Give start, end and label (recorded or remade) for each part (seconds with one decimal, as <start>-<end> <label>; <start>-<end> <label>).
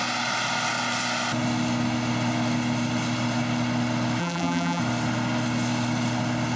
0.0-4.2 recorded; 4.2-4.8 remade; 4.8-6.6 recorded